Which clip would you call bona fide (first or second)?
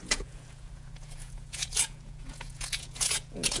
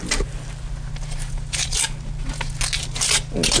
second